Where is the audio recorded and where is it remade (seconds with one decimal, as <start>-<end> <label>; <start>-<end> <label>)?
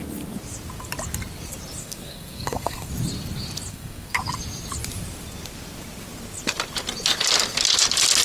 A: 0.0-1.8 recorded; 1.8-2.9 remade; 2.9-3.7 recorded; 3.7-4.2 remade; 4.2-8.2 recorded